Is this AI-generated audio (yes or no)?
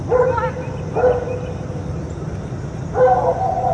no